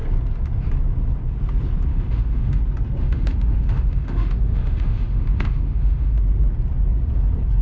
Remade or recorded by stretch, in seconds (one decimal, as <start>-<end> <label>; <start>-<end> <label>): 0.0-1.9 recorded; 1.9-2.6 remade; 2.6-3.0 recorded; 3.0-6.2 remade; 6.2-7.6 recorded

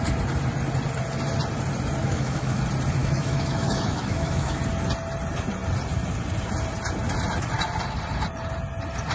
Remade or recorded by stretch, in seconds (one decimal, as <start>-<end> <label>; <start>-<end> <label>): 0.0-2.0 recorded; 2.0-2.6 remade; 2.6-3.0 recorded; 3.0-4.6 remade; 4.6-9.1 recorded

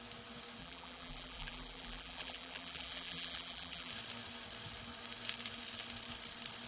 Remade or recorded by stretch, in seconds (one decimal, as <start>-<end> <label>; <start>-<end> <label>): 0.0-0.6 recorded; 0.6-3.9 remade; 3.9-6.7 recorded

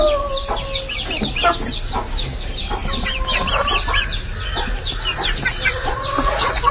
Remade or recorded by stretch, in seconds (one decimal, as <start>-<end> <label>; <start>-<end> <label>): 0.0-5.8 recorded; 5.8-6.7 remade

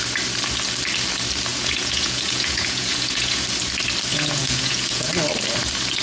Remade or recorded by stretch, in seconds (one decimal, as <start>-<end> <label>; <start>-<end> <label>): 0.0-1.5 recorded; 1.5-3.4 remade; 3.4-4.1 recorded; 4.1-5.1 remade; 5.1-6.0 recorded

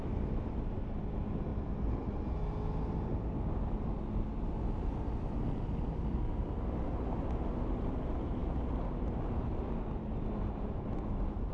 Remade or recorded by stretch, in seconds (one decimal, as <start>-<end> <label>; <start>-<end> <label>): 0.0-11.5 recorded

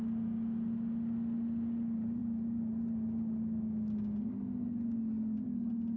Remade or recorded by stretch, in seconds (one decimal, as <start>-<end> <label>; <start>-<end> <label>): 0.0-6.0 recorded